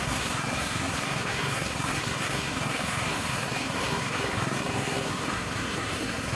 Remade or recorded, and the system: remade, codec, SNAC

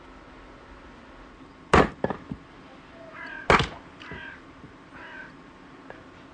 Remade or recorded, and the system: recorded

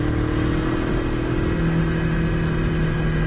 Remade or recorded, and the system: recorded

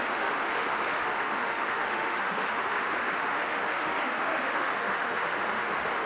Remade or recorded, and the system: remade, autoencoder, DAC-VAE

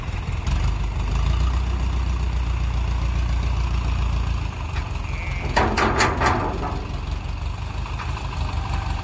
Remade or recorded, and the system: recorded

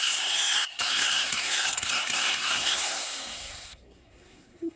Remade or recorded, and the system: remade, codec, SNAC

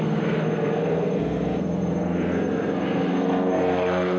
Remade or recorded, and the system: remade, codec, SNAC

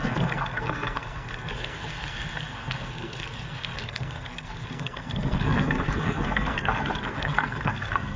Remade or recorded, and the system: remade, codec, SNAC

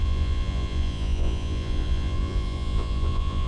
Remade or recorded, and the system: remade, vocoder, Vocos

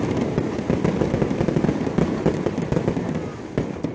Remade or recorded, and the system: recorded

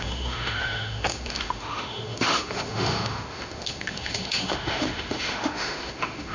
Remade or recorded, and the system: remade, autoencoder, DAC-VAE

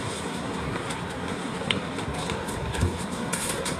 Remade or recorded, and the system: remade, codec, SNAC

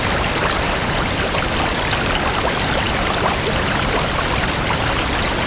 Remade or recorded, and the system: recorded